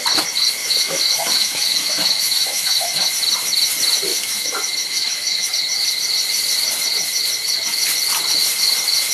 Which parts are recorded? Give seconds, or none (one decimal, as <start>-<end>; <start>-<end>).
0.0-0.6; 3.1-4.1; 5.5-9.1